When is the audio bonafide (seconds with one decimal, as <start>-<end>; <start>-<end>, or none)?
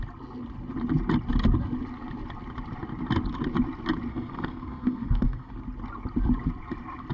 0.0-4.1; 5.5-7.1